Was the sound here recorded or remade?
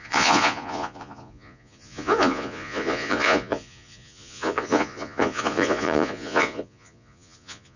remade